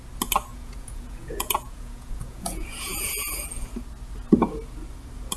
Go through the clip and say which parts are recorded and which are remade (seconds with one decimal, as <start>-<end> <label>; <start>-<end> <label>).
0.0-0.5 recorded; 0.5-3.7 remade; 3.7-5.4 recorded